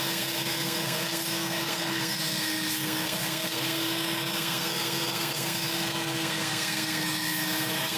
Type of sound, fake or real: fake